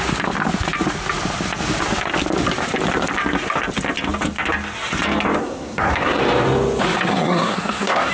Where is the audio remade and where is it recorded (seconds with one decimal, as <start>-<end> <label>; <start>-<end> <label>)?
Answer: 0.0-5.4 recorded; 5.4-6.2 remade; 6.2-7.1 recorded; 7.1-8.1 remade